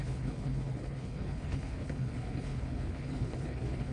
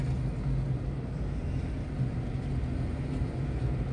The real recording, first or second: second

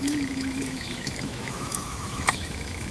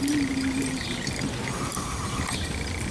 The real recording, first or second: second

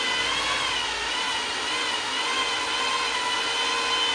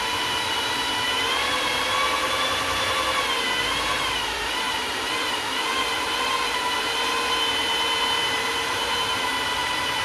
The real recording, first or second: first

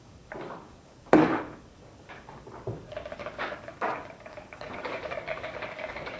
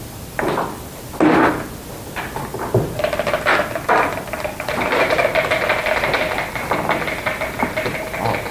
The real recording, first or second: second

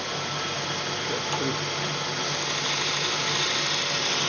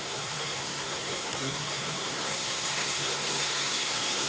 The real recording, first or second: first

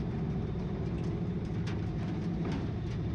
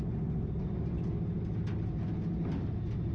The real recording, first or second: second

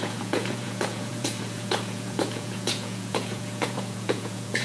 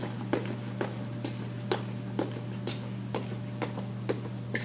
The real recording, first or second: second